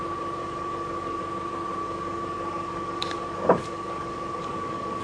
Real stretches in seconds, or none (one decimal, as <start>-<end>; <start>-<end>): 0.0-0.4; 1.2-1.8